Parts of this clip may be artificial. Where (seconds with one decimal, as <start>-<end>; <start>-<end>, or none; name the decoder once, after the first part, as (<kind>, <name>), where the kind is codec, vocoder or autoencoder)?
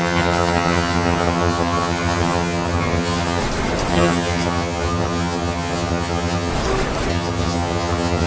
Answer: 0.0-3.4 (vocoder, HiFi-GAN); 3.9-6.5; 7.1-8.3